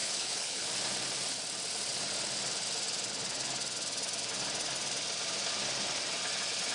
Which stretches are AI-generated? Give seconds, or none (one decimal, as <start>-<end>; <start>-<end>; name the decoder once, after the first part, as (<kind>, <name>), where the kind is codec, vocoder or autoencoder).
0.0-0.7 (codec, HILCodec)